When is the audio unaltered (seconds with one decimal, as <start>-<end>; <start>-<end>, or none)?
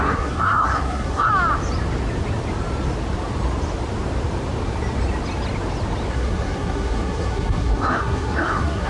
1.3-6.1